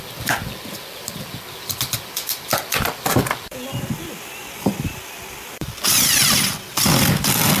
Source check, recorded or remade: recorded